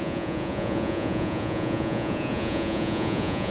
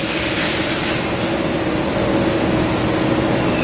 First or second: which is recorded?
second